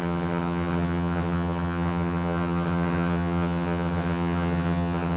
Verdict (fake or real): fake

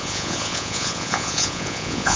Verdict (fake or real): fake